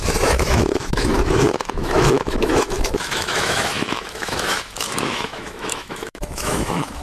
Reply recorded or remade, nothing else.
remade